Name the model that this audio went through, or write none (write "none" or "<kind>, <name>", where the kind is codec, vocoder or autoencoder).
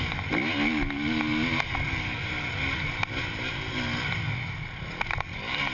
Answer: none